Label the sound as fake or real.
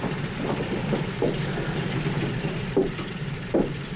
real